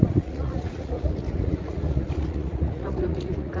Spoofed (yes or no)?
yes